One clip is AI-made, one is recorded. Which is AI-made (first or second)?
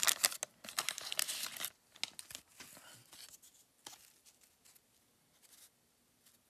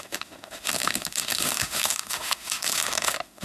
second